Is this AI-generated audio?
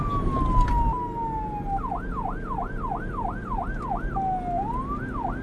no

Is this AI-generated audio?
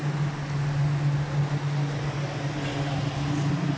no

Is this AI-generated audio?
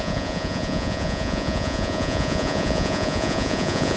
yes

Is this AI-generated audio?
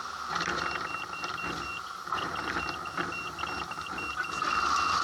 no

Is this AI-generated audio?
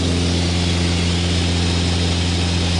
no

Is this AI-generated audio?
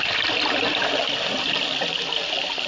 no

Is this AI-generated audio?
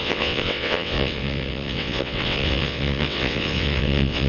yes